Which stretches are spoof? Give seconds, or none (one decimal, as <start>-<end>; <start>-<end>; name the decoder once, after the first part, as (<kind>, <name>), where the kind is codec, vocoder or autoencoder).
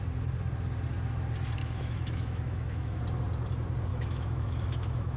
1.6-3.0 (autoencoder, DAC-VAE); 3.9-5.2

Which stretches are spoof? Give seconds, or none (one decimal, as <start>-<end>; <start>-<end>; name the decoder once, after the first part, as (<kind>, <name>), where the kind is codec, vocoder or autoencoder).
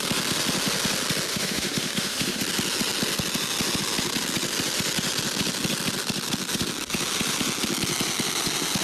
1.3-2.4 (autoencoder, DAC-VAE)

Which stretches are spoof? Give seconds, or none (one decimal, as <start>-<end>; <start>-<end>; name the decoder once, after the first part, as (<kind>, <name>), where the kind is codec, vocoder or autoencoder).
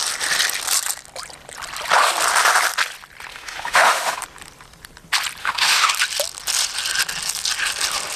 3.3-4.2 (autoencoder, DAC-VAE); 5.4-5.9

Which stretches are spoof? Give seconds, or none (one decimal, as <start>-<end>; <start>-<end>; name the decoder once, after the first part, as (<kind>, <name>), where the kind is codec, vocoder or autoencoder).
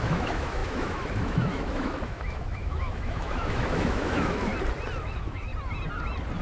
0.0-4.5 (autoencoder, DAC-VAE); 5.0-5.5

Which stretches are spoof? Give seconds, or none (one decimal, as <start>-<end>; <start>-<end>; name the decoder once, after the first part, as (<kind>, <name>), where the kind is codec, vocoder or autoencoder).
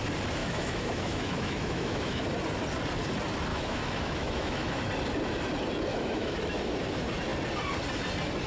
0.4-2.2 (autoencoder, DAC-VAE); 3.5-4.9; 5.9-6.7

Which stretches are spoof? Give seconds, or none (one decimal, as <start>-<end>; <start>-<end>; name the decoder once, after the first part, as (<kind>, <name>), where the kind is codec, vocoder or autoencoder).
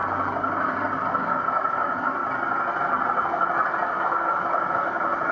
1.1-2.2 (autoencoder, DAC-VAE); 3.9-5.3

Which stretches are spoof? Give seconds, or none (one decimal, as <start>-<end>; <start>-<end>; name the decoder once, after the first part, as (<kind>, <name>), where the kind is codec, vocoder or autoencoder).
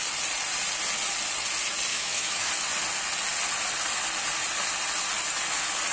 1.9-2.5 (autoencoder, DAC-VAE)